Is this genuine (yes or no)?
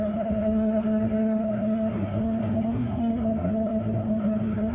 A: no